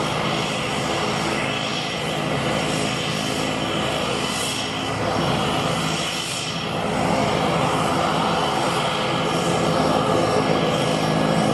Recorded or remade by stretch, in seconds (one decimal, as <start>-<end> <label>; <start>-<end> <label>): 0.0-1.7 recorded; 1.7-2.5 remade; 2.5-11.5 recorded

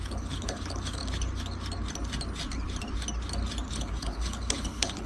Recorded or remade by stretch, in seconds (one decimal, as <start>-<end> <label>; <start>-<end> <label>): 0.0-1.0 remade; 1.0-3.7 recorded; 3.7-5.1 remade

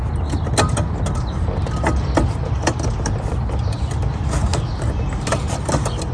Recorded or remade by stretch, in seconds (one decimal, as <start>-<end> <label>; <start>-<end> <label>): 0.0-6.1 recorded

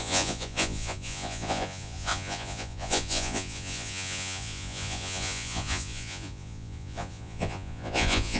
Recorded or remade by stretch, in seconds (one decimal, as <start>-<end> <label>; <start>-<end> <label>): 0.0-8.4 remade

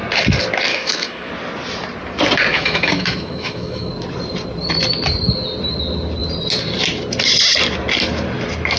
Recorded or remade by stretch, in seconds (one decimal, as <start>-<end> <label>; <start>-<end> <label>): 0.0-0.7 recorded; 0.7-1.3 remade; 1.3-2.5 recorded; 2.5-3.9 remade; 3.9-8.8 recorded

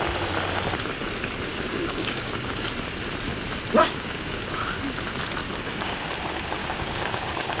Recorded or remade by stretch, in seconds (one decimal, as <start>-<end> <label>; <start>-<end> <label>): 0.0-1.5 recorded; 1.5-2.6 remade; 2.6-3.8 recorded; 3.8-4.5 remade; 4.5-5.4 recorded; 5.4-6.1 remade; 6.1-6.6 recorded; 6.6-7.6 remade